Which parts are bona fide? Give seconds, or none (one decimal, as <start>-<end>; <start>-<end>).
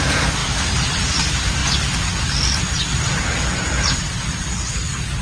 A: 0.0-5.2